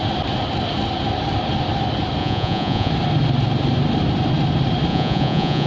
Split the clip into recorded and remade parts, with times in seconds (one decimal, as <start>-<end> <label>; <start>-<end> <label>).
0.0-2.2 recorded; 2.2-2.9 remade; 2.9-4.9 recorded; 4.9-5.7 remade